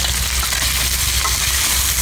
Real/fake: real